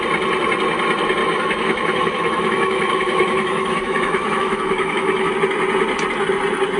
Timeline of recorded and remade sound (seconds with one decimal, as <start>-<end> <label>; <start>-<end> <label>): 0.0-1.2 recorded; 1.2-5.3 remade; 5.3-6.8 recorded